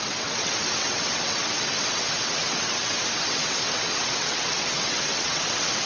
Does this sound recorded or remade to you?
remade